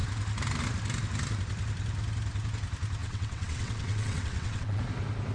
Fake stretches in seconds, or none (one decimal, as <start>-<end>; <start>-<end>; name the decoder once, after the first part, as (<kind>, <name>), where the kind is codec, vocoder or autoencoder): 3.0-4.8 (vocoder, WaveNeXt)